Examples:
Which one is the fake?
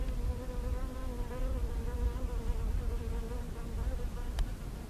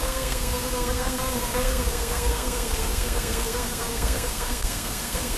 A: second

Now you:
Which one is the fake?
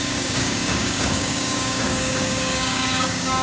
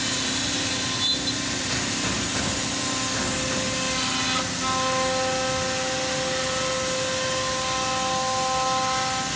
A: first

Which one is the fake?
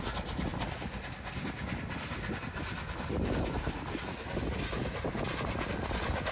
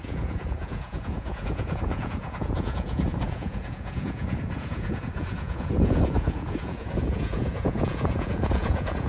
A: second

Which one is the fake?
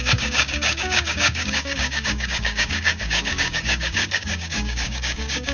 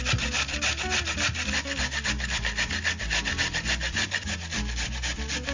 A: first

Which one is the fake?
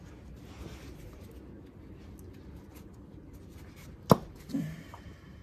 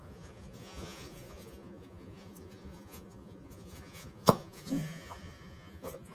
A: second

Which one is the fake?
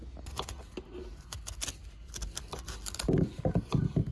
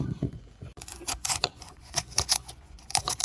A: second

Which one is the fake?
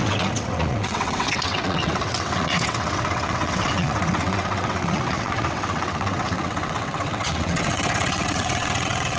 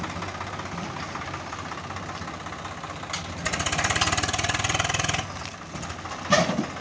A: first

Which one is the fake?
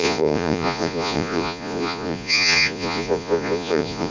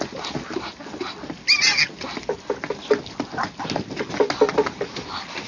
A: first